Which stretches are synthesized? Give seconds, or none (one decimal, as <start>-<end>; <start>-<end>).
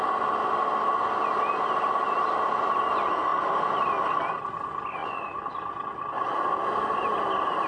5.0-5.5